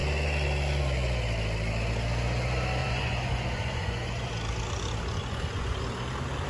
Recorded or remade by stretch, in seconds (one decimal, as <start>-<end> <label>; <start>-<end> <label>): 0.0-2.8 recorded; 2.8-4.3 remade; 4.3-5.2 recorded; 5.2-5.8 remade; 5.8-6.5 recorded